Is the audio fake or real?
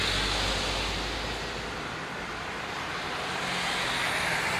real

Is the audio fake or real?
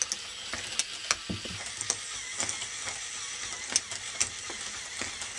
real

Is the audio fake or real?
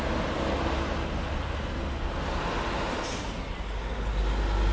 real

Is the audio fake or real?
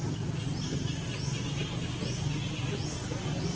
real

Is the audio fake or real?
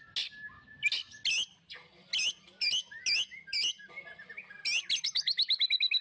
real